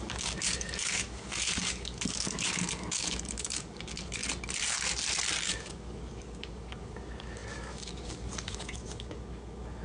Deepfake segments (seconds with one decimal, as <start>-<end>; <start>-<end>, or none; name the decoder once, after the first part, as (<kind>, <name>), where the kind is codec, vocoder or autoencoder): 0.0-4.2 (codec, DAC); 5.4-9.8

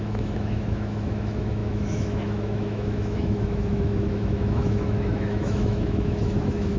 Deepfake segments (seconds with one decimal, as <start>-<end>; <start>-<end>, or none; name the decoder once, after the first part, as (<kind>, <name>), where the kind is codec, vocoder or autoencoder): 0.0-6.8 (autoencoder, DAC-VAE)

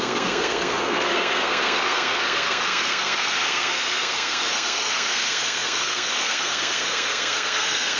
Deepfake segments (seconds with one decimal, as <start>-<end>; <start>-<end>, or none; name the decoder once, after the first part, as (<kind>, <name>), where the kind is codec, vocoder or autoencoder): 0.0-8.0 (codec, SNAC)

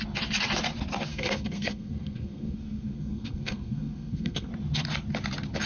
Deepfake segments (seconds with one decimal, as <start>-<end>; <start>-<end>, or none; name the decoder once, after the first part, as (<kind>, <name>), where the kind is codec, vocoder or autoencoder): 1.1-4.5 (codec, SNAC)

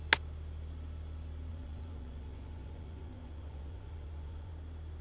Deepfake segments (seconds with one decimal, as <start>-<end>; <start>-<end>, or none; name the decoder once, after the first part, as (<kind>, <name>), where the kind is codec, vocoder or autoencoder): 1.5-4.5 (vocoder, Vocos)

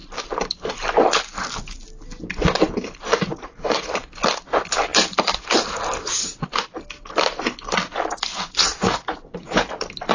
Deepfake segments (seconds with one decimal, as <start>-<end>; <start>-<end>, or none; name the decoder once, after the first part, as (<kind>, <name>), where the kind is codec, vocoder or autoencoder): 3.1-3.9 (vocoder, Vocos); 8.3-9.7